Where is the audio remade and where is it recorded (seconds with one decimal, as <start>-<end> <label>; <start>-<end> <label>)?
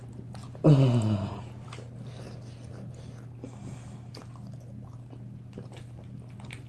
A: 0.0-6.7 recorded